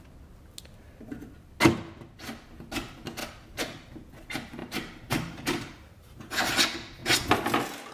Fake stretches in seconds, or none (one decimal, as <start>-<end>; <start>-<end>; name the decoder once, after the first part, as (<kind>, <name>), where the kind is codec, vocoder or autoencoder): 4.6-6.3 (vocoder, BigVGAN v2)